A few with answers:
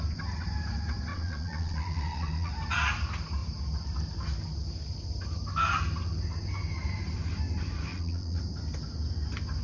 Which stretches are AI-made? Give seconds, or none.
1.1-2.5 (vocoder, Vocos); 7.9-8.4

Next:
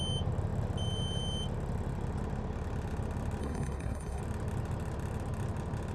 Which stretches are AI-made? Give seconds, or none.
3.4-4.2 (codec, SNAC)

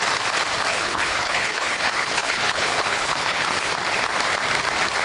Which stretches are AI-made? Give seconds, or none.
0.7-3.7 (codec, HILCodec)

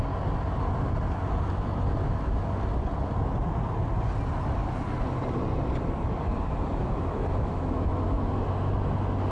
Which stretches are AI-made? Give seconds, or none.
6.8-8.3 (autoencoder, DAC-VAE)

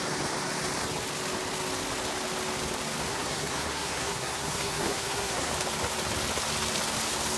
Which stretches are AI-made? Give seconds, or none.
3.1-5.5 (codec, SNAC)

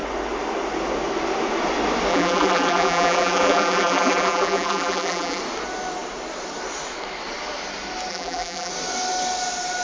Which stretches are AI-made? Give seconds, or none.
2.1-5.4 (vocoder, BigVGAN v2); 8.1-8.7

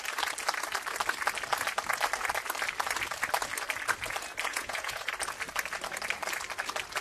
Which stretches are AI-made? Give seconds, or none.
4.5-5.1 (vocoder, Vocos)